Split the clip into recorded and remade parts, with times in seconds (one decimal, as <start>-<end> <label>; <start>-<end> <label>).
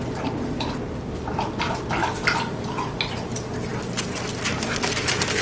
0.0-5.4 recorded